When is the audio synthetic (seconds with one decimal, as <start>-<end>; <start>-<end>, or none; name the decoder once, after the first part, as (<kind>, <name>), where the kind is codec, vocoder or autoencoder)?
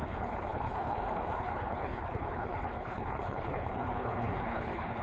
0.0-5.0 (codec, HILCodec)